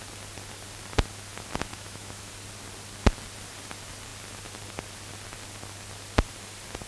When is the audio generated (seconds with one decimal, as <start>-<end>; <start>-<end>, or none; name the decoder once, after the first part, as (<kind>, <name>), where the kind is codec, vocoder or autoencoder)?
1.7-2.3 (autoencoder, DAC-VAE)